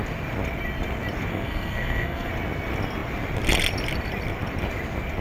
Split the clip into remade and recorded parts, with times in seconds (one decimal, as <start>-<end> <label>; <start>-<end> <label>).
0.0-1.3 recorded; 1.3-2.3 remade; 2.3-5.2 recorded

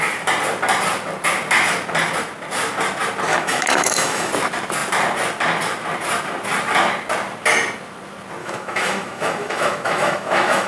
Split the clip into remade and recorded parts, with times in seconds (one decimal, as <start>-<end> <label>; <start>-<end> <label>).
0.0-3.3 recorded; 3.3-4.3 remade; 4.3-8.4 recorded; 8.4-10.7 remade

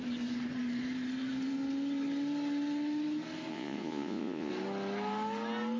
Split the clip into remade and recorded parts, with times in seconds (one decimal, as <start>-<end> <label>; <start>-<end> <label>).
0.0-3.5 recorded; 3.5-4.5 remade; 4.5-5.8 recorded

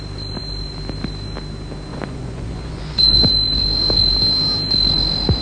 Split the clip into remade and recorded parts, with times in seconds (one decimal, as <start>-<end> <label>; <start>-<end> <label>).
0.0-1.9 recorded; 1.9-3.2 remade; 3.2-5.4 recorded

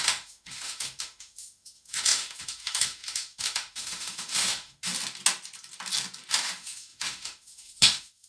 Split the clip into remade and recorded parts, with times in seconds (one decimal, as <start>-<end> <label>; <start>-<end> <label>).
0.0-4.9 remade; 4.9-6.3 recorded; 6.3-8.3 remade

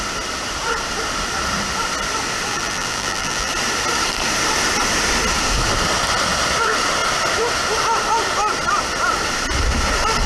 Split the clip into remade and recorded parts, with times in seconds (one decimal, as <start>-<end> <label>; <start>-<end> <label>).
0.0-2.5 recorded; 2.5-3.5 remade; 3.5-10.3 recorded